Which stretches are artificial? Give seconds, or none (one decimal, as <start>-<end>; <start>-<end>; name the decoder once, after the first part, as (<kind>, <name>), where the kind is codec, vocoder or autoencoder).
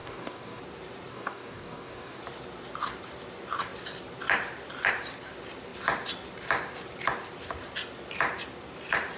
0.0-0.6 (codec, DAC); 1.1-2.2